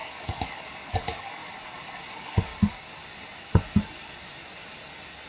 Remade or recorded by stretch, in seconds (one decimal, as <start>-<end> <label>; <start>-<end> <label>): 0.0-1.4 remade; 1.4-2.1 recorded; 2.1-2.5 remade; 2.5-5.3 recorded